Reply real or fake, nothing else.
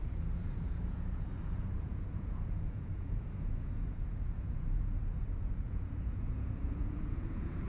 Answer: fake